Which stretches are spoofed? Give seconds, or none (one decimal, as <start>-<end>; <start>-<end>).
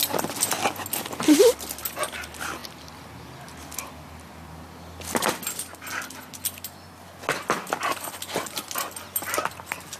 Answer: none